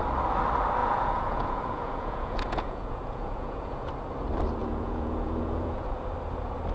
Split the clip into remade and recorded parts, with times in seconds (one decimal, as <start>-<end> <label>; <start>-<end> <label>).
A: 0.0-0.8 recorded; 0.8-3.9 remade; 3.9-4.6 recorded; 4.6-6.1 remade; 6.1-6.7 recorded